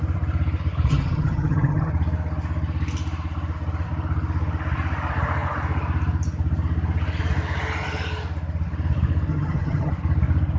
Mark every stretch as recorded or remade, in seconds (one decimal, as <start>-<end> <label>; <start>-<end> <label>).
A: 0.0-0.9 recorded; 0.9-1.9 remade; 1.9-9.3 recorded; 9.3-9.9 remade; 9.9-10.6 recorded